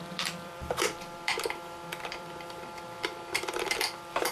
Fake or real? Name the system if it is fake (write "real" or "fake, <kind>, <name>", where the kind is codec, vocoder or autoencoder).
fake, vocoder, BigVGAN v2